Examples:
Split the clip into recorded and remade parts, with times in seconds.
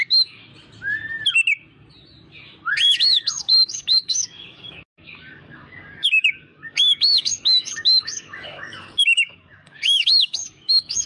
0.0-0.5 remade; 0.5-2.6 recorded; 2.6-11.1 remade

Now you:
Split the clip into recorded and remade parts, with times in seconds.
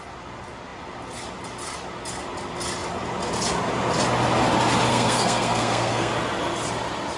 0.0-4.9 recorded; 4.9-6.1 remade; 6.1-7.2 recorded